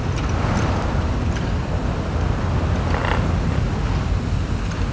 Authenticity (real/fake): real